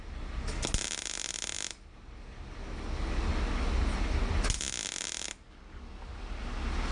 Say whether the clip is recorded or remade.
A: recorded